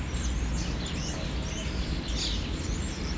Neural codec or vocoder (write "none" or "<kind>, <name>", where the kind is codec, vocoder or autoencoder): none